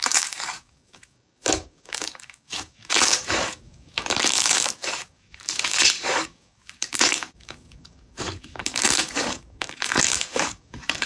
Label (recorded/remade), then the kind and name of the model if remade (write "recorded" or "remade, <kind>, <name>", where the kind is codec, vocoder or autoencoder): remade, codec, DAC